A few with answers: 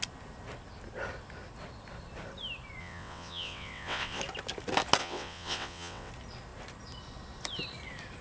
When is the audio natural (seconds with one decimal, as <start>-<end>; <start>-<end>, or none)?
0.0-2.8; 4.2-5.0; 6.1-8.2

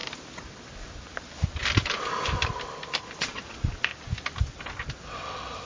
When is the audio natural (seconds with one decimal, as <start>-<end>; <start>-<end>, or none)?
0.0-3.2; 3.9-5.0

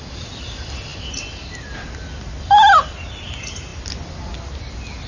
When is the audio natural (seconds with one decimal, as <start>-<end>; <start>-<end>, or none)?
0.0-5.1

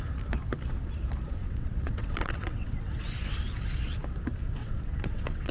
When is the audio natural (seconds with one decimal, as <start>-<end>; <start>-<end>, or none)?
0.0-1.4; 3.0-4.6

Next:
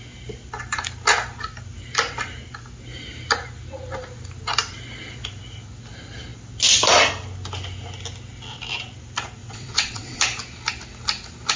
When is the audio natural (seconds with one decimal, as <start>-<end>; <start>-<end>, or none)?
0.0-9.4; 10.2-11.6

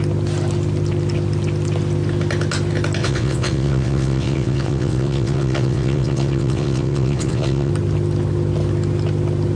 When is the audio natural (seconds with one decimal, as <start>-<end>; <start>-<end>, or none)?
0.0-3.0; 7.7-9.6